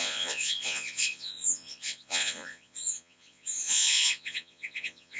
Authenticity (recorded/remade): remade